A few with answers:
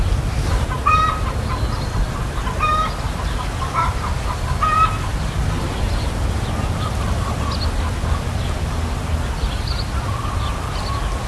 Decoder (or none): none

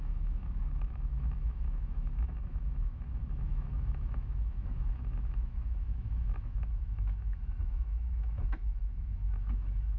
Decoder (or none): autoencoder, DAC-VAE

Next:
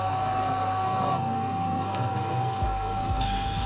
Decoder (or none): codec, SNAC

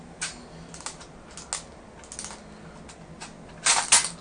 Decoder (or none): none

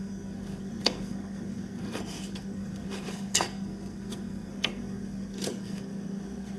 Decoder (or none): codec, SNAC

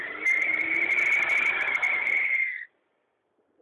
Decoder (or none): vocoder, BigVGAN v2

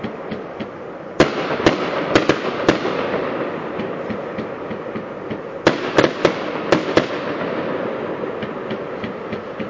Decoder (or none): none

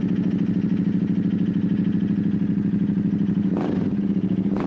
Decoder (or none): none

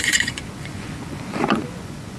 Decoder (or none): vocoder, Vocos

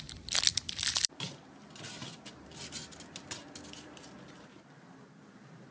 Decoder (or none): vocoder, BigVGAN v2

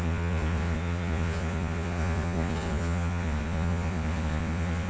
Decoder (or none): vocoder, Vocos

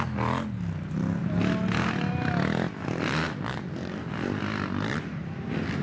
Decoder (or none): none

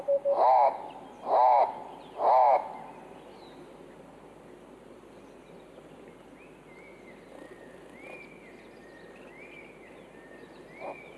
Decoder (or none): none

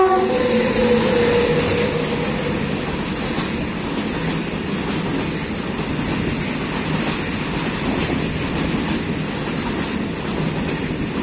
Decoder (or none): none